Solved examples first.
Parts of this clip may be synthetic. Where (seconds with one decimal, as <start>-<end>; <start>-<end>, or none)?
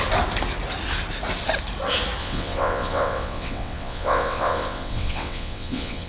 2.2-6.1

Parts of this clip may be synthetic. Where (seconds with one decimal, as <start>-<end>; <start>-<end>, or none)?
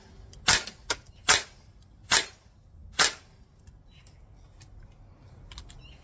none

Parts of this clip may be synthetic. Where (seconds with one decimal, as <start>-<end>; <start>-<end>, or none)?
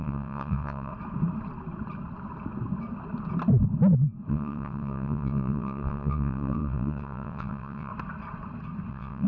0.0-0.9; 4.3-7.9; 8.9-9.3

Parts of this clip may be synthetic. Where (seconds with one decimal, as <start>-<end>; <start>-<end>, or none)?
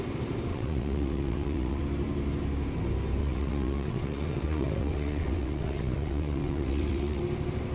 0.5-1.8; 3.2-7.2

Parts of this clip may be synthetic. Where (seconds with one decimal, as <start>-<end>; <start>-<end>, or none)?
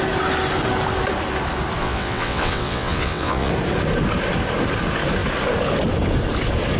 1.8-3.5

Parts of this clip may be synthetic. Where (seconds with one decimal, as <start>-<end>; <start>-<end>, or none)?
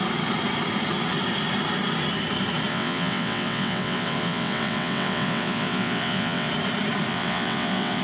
2.7-6.5; 7.1-8.0